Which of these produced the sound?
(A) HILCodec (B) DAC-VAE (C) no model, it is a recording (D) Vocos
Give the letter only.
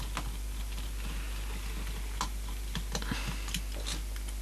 C